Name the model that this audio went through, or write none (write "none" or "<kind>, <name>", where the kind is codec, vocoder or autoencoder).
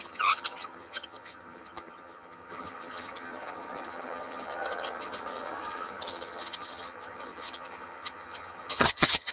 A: vocoder, HiFi-GAN